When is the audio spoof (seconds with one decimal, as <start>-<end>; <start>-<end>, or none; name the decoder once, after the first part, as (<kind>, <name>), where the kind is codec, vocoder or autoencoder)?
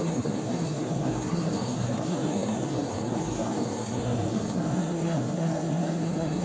0.0-6.4 (codec, SNAC)